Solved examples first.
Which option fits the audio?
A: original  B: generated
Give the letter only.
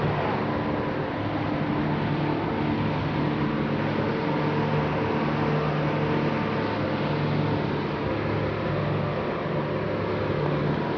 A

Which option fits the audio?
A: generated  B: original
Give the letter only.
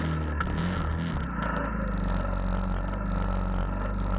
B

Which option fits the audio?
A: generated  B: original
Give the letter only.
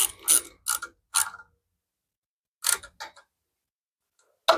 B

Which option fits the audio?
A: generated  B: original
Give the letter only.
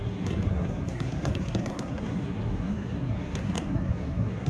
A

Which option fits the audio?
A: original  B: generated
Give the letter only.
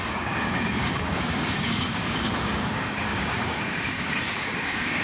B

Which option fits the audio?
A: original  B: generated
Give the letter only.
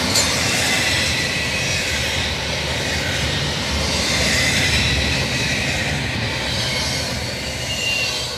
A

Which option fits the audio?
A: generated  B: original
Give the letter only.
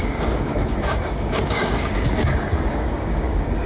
A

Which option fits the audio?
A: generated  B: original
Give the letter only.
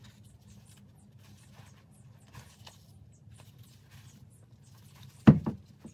B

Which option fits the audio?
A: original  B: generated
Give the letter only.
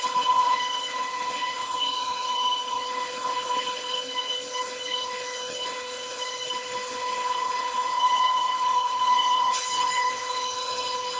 B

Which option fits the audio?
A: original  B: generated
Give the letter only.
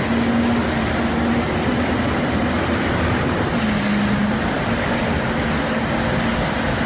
A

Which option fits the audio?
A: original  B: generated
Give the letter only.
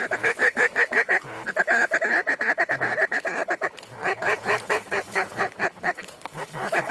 B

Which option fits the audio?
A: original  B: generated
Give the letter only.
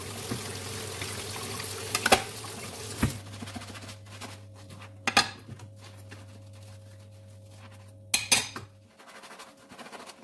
A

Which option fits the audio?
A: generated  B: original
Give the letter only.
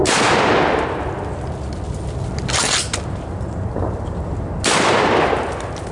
B